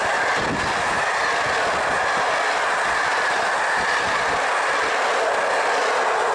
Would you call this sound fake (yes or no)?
no